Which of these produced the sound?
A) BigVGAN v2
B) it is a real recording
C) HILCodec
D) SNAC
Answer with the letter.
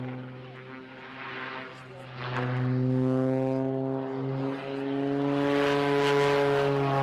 B